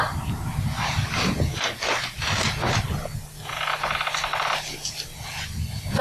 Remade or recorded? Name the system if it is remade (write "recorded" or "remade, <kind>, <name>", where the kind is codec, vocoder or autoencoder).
recorded